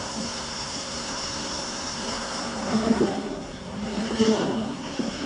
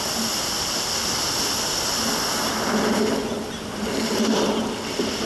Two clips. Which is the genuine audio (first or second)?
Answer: second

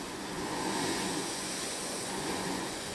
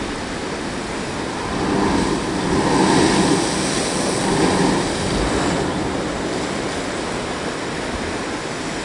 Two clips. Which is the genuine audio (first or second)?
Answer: second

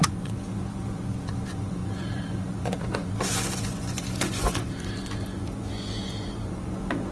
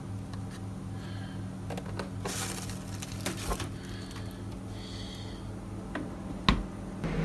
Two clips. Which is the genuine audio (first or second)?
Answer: second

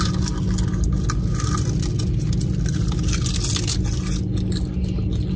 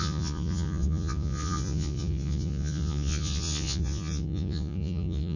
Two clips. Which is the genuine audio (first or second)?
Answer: first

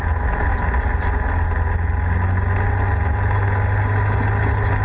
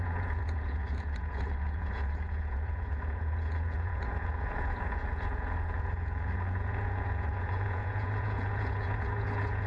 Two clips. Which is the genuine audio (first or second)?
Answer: first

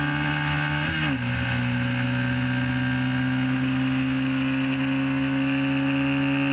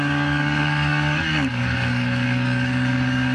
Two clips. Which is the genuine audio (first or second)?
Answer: first